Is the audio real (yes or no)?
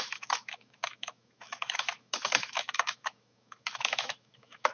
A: no